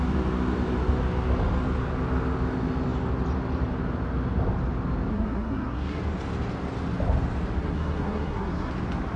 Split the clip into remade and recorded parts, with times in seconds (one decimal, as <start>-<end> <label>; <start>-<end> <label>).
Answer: 0.0-5.1 recorded; 5.1-6.0 remade; 6.0-7.6 recorded; 7.6-8.7 remade; 8.7-9.2 recorded